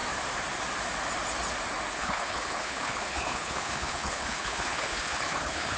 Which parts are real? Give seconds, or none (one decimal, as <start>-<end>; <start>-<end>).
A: 0.0-1.9